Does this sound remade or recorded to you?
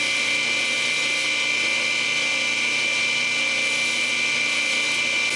recorded